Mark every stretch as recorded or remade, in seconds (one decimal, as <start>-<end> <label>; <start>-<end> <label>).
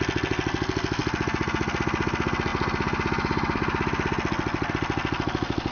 0.0-5.7 recorded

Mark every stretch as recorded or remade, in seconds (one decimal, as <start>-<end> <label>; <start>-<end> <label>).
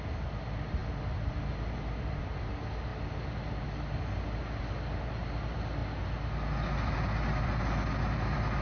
0.0-8.6 recorded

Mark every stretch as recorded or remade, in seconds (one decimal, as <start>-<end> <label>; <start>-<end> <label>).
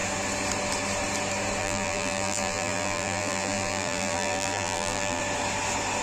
0.0-1.6 recorded; 1.6-5.2 remade; 5.2-6.0 recorded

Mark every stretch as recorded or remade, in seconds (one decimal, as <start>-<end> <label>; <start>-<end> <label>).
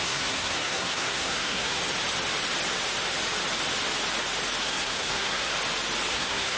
0.0-1.8 remade; 1.8-4.6 recorded; 4.6-5.5 remade; 5.5-6.1 recorded; 6.1-6.6 remade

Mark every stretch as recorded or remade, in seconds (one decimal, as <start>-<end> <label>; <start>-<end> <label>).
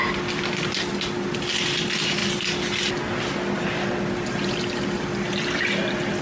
0.0-6.2 recorded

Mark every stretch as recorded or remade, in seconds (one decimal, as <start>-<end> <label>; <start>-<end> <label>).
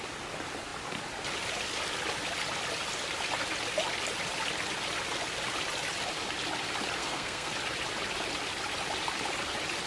0.0-7.0 recorded; 7.0-7.5 remade; 7.5-9.9 recorded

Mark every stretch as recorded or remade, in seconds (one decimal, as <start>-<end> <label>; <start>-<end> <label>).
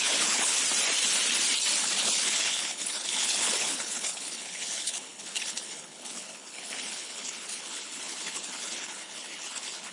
0.0-0.6 remade; 0.6-1.8 recorded; 1.8-9.9 remade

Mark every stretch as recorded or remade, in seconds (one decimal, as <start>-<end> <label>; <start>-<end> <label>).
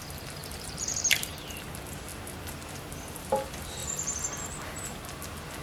0.0-0.4 recorded; 0.4-1.3 remade; 1.3-5.6 recorded